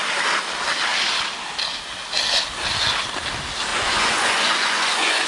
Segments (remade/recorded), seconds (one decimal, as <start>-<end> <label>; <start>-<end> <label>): 0.0-3.7 recorded; 3.7-5.3 remade